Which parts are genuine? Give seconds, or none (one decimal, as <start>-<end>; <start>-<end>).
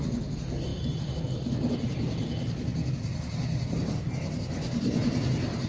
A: 0.0-5.7